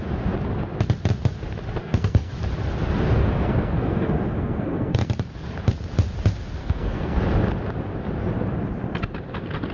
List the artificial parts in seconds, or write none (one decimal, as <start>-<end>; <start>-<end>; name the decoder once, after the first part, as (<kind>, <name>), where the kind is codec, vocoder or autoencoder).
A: 1.8-2.3 (codec, SNAC); 3.2-5.1; 6.6-7.2